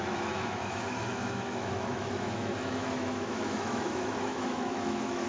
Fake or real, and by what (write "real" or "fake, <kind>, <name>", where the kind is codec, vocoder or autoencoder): fake, autoencoder, DAC-VAE